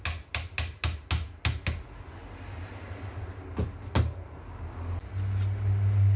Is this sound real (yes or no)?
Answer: yes